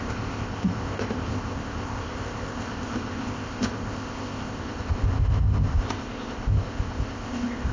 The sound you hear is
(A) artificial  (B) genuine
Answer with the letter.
A